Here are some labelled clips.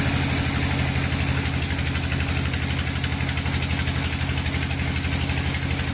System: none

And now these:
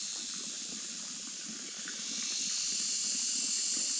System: none